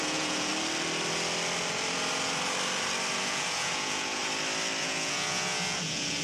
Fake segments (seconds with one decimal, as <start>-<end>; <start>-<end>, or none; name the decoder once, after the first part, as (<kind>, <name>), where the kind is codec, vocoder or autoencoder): 0.0-0.5 (vocoder, Vocos); 3.2-4.2; 4.8-6.2